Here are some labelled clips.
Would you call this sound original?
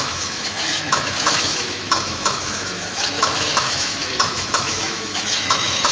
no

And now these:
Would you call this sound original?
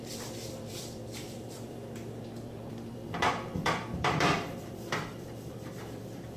no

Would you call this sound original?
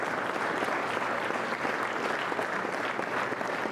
yes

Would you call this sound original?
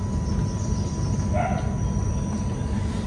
yes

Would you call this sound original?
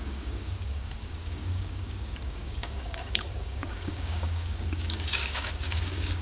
no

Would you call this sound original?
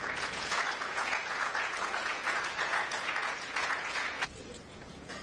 no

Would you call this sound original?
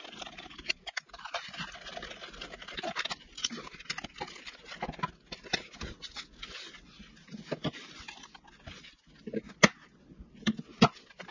yes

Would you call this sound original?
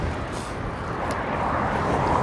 yes